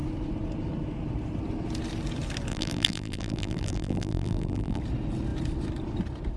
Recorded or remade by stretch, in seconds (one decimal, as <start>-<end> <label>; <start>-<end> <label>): 0.0-2.5 recorded; 2.5-4.8 remade; 4.8-6.4 recorded